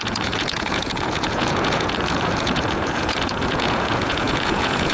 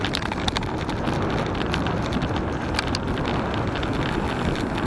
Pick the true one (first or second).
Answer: second